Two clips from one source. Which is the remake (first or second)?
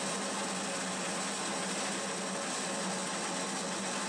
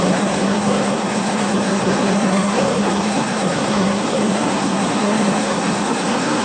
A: second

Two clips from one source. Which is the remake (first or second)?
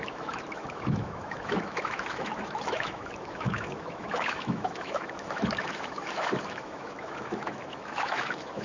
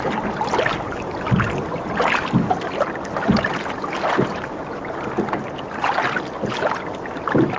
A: first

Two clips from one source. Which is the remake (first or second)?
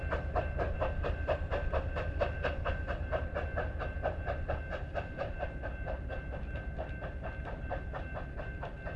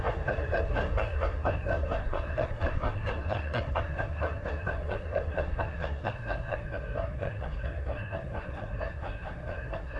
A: second